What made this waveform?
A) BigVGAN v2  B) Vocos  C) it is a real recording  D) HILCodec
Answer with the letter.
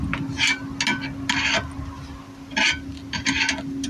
C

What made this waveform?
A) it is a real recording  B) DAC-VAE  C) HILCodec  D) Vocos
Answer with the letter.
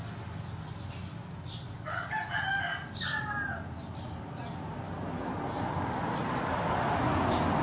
A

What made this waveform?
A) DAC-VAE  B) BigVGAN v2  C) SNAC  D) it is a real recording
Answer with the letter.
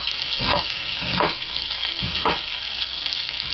C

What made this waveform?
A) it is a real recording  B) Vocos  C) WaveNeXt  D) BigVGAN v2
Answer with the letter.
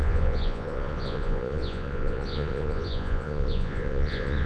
B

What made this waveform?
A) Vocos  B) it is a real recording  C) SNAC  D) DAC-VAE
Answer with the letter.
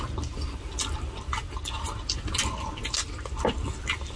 B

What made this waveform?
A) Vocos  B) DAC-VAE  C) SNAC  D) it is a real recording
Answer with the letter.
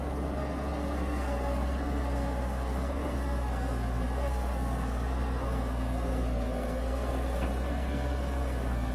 C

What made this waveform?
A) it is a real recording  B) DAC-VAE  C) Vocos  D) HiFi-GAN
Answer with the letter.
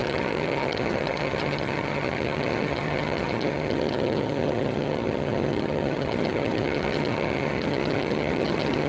D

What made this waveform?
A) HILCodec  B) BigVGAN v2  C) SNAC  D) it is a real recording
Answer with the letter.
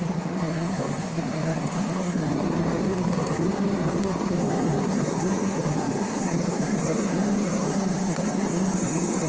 C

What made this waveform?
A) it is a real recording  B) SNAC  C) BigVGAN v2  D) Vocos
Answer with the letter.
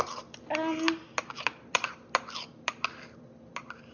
A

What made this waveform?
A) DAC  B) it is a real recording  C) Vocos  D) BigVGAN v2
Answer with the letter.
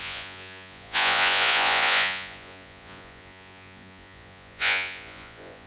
C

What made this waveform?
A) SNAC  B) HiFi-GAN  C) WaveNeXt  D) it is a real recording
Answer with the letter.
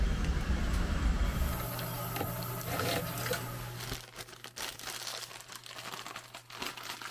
D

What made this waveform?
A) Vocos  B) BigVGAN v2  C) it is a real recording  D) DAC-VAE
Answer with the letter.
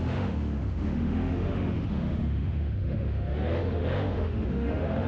D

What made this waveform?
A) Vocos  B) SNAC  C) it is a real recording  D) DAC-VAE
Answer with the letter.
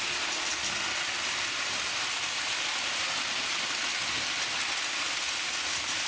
C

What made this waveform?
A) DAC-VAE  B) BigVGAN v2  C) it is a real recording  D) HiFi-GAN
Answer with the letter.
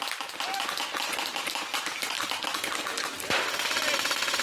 C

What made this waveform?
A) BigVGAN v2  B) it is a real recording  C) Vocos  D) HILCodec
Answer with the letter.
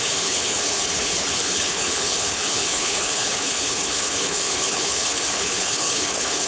D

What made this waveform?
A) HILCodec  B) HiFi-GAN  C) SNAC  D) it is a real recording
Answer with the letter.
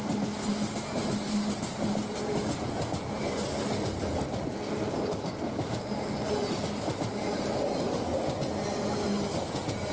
D